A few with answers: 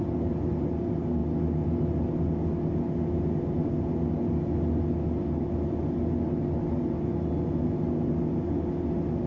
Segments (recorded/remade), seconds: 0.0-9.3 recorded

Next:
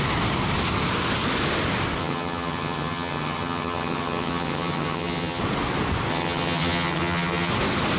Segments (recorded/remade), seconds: 0.0-2.0 recorded; 2.0-5.4 remade; 5.4-6.1 recorded; 6.1-7.5 remade; 7.5-8.0 recorded